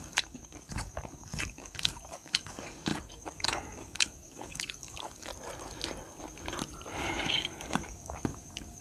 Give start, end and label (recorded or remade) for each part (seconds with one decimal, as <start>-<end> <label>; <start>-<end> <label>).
0.0-5.3 remade; 5.3-7.0 recorded; 7.0-8.8 remade